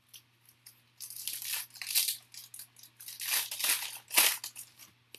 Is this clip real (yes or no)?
yes